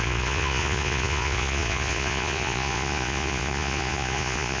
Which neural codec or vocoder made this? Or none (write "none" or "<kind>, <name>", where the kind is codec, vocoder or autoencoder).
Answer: vocoder, Vocos